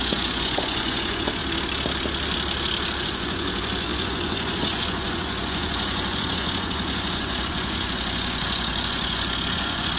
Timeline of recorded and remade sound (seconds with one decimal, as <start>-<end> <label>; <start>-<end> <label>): 0.0-1.4 remade; 1.4-3.0 recorded; 3.0-10.0 remade